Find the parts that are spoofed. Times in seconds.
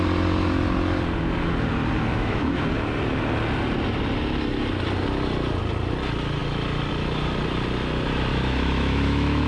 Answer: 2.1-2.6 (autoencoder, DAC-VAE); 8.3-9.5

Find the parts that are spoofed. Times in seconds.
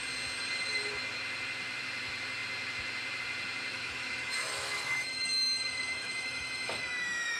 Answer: 3.7-7.4 (autoencoder, DAC-VAE)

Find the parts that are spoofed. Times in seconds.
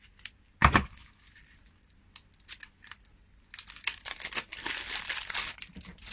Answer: 0.6-1.2 (autoencoder, DAC-VAE)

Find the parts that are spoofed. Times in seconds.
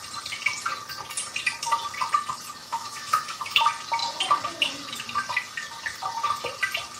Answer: 2.6-3.6 (autoencoder, DAC-VAE)